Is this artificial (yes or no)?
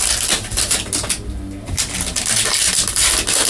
no